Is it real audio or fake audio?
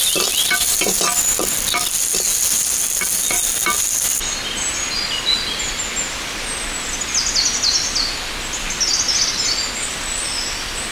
real